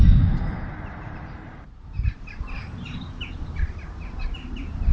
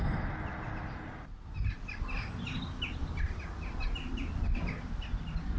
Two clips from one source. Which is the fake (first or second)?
first